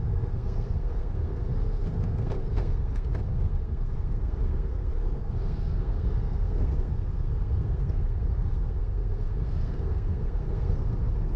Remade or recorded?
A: remade